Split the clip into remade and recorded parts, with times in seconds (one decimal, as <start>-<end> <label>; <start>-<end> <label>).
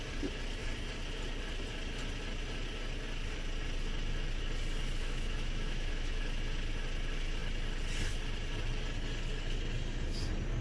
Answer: 0.0-5.0 recorded; 5.0-6.2 remade; 6.2-10.6 recorded